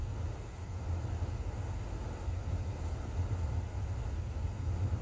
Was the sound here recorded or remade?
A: recorded